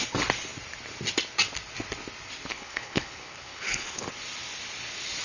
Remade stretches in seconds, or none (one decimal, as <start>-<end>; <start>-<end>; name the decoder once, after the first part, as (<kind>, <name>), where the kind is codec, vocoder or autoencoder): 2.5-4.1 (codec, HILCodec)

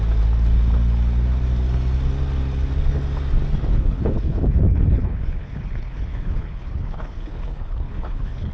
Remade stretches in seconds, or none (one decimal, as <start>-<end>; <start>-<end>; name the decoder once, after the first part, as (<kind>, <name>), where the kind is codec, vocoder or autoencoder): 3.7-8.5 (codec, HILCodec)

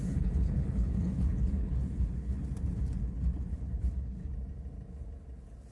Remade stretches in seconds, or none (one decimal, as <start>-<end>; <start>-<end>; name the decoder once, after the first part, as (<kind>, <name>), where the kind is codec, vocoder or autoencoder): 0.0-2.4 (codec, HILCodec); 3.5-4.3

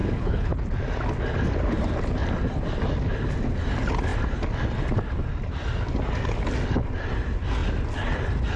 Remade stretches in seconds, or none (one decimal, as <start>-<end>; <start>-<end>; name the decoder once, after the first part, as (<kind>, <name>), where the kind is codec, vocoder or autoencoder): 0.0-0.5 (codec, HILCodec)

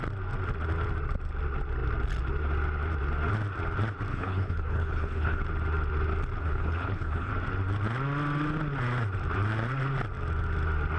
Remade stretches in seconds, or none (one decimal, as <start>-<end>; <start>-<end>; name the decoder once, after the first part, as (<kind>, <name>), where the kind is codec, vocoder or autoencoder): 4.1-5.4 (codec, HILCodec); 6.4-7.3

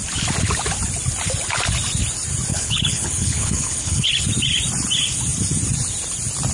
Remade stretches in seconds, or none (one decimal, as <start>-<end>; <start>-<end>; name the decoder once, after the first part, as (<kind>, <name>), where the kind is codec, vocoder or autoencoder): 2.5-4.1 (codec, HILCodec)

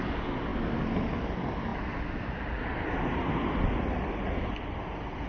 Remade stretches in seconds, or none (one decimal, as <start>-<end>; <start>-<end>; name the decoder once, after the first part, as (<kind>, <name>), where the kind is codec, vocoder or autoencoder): none

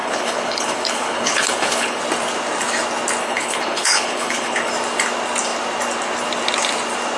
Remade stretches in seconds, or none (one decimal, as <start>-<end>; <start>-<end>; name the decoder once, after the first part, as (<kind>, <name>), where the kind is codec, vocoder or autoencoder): 0.0-2.0 (codec, HILCodec); 3.2-4.7